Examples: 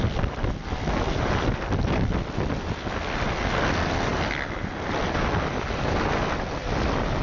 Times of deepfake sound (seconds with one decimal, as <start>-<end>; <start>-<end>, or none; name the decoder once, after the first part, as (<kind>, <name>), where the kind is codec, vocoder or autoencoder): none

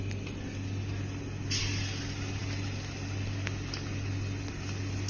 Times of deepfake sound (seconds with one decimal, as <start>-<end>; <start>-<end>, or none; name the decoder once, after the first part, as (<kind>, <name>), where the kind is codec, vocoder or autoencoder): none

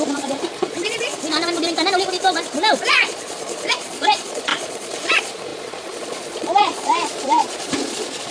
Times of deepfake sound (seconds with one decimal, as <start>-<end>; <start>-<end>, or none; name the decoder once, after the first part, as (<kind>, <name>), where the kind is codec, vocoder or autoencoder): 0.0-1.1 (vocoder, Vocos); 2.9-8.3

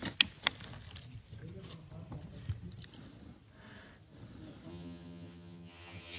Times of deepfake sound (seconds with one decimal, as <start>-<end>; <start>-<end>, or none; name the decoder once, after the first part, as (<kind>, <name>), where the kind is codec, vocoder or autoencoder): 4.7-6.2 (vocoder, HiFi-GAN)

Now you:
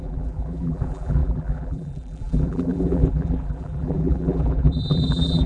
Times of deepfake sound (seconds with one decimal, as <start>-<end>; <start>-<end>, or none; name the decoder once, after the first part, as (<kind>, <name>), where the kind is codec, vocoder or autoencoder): 0.0-5.5 (vocoder, BigVGAN v2)

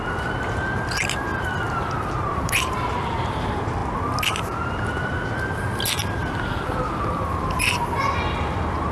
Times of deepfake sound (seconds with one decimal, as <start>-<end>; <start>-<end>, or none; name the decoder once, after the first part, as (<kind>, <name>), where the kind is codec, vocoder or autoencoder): 1.3-2.7 (vocoder, BigVGAN v2); 6.2-7.8

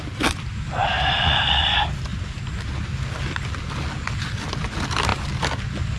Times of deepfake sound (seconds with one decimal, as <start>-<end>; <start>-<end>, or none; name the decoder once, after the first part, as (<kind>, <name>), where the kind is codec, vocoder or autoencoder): none

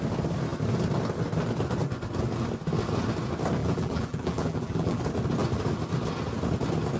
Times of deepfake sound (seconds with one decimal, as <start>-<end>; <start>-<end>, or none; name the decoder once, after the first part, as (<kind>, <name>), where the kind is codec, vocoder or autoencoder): 3.6-5.0 (vocoder, BigVGAN v2)